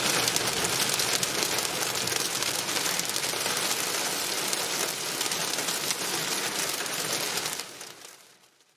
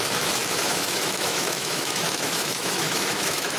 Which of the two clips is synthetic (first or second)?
second